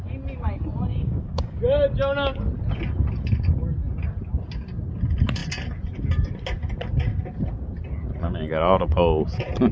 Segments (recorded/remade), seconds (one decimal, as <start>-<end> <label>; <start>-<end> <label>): 0.0-0.9 recorded; 0.9-1.6 remade; 1.6-9.7 recorded